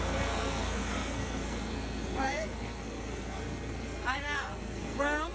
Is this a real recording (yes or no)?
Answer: no